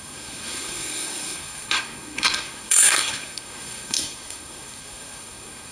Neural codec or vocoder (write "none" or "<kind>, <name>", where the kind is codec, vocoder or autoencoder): codec, SNAC